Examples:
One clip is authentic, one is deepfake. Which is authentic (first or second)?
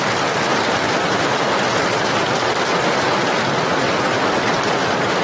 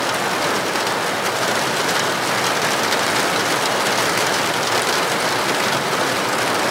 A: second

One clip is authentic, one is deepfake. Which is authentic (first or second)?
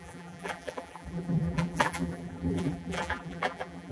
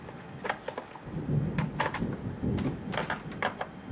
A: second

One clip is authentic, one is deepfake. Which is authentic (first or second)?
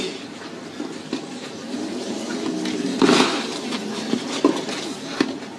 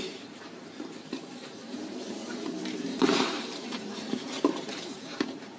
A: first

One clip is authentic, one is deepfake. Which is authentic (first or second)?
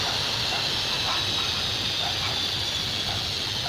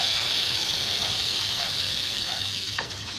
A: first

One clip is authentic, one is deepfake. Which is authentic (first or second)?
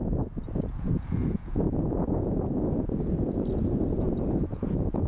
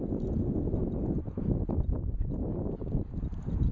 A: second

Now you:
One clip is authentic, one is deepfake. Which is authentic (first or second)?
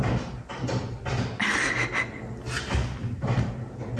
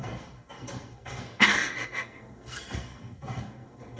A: first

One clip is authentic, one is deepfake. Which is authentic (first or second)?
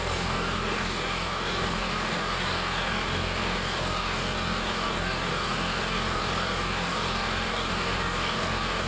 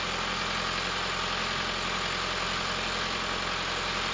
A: second